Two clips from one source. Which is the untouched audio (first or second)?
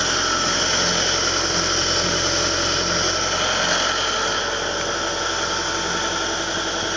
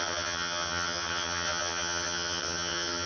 first